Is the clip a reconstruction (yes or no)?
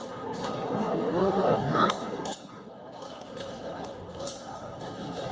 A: yes